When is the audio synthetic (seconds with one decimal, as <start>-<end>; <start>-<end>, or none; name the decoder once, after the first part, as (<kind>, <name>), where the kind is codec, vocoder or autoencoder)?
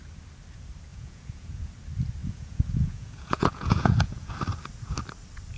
0.9-1.7 (vocoder, Vocos); 2.2-4.3